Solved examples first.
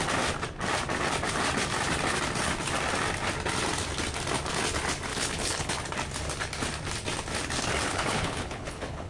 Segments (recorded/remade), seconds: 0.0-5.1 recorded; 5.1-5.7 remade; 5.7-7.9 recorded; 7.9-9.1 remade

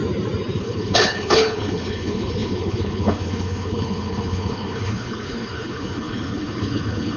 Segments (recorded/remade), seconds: 0.0-0.6 recorded; 0.6-7.2 remade

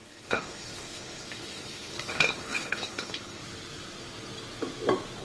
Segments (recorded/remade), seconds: 0.0-3.4 remade; 3.4-5.2 recorded

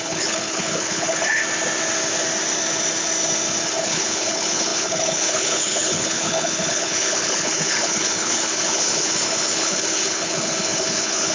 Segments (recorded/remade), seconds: 0.0-1.4 remade; 1.4-3.8 recorded; 3.8-11.3 remade